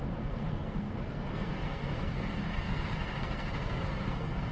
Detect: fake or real fake